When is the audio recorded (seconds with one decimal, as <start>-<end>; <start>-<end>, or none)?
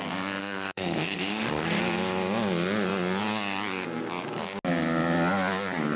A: 0.0-0.4; 1.8-6.0